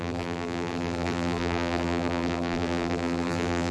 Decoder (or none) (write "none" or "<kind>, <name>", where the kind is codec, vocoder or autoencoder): vocoder, BigVGAN v2